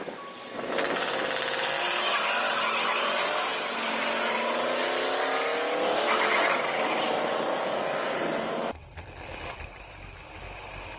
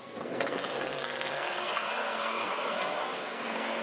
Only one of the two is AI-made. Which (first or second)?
second